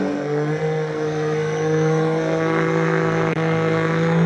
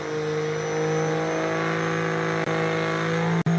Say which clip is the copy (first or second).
first